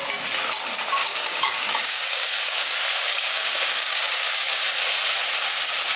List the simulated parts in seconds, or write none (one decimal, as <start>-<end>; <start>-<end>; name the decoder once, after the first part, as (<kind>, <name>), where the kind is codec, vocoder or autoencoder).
1.0-4.6 (codec, DAC)